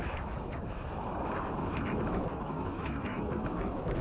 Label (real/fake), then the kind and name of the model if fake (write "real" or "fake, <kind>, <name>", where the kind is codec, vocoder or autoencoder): fake, autoencoder, DAC-VAE